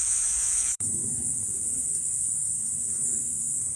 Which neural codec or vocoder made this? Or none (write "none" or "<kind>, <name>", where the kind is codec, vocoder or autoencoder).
codec, SNAC